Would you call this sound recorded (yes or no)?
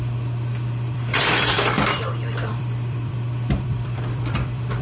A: no